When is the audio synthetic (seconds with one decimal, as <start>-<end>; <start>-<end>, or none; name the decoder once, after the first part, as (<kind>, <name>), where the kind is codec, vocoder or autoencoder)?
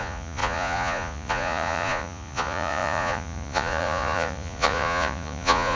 0.0-5.8 (vocoder, Vocos)